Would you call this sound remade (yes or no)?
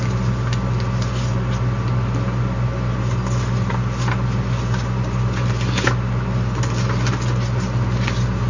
no